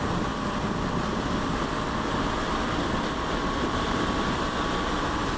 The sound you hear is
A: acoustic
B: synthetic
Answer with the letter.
A